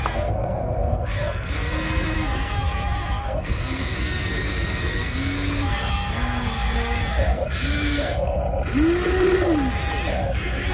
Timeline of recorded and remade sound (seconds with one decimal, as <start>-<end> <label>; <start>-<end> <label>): 0.0-8.4 remade; 8.4-10.1 recorded; 10.1-10.7 remade